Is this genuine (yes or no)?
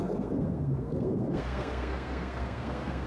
no